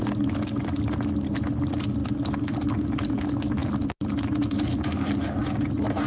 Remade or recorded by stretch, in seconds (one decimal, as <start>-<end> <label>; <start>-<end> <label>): 0.0-6.1 recorded